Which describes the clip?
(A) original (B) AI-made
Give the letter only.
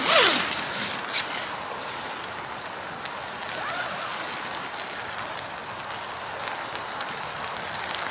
A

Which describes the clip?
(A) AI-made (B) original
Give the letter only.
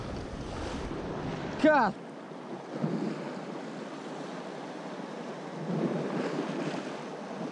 B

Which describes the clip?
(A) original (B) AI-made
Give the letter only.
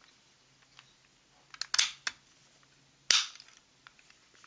A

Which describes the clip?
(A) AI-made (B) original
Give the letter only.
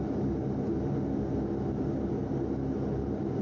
B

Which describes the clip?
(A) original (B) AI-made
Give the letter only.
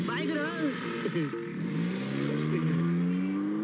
A